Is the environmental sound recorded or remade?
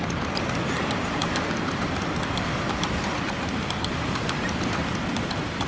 remade